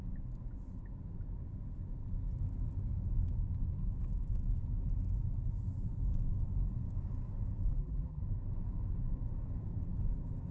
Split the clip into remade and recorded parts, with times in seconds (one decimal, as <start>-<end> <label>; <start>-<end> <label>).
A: 0.0-7.7 recorded; 7.7-8.2 remade; 8.2-10.5 recorded